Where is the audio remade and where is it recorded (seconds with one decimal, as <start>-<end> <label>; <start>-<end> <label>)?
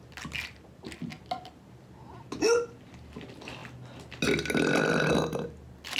0.0-6.0 recorded